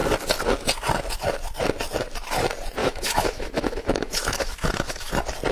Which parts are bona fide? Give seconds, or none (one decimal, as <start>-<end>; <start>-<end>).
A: 0.0-2.8; 5.1-5.5